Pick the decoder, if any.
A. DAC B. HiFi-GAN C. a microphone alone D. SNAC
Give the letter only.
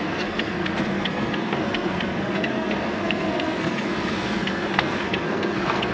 D